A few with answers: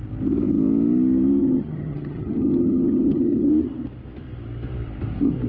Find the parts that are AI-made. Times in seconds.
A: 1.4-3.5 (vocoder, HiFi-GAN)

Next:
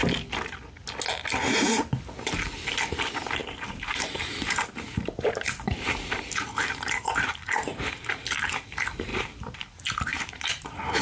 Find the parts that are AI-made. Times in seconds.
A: 3.4-7.9 (vocoder, BigVGAN v2); 9.1-9.6; 10.1-11.0

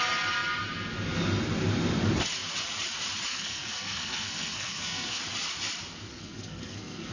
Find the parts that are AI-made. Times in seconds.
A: 3.3-5.2 (codec, SNAC); 6.1-7.1

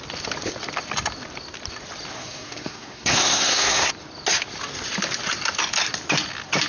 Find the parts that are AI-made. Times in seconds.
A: 2.1-3.9 (codec, SNAC)

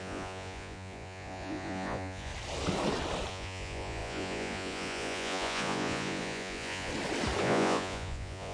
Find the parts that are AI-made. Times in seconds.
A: 0.0-2.3 (vocoder, Vocos); 3.3-6.9; 7.4-8.5

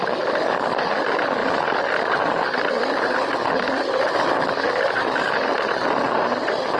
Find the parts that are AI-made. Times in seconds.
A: none

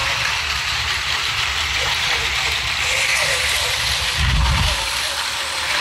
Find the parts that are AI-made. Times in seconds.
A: 0.0-2.3 (vocoder, BigVGAN v2); 3.1-3.9